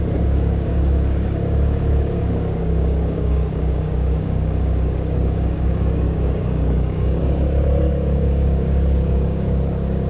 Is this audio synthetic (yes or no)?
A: yes